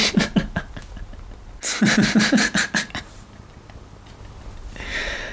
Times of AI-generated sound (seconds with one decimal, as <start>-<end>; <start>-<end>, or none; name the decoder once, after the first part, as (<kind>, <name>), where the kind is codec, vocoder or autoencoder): none